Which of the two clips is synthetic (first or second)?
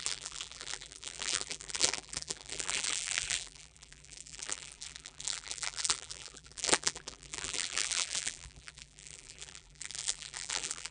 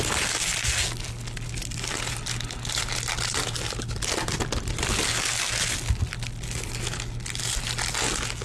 first